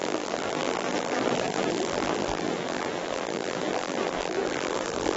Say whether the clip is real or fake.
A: fake